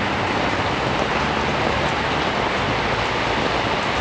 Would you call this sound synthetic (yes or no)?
no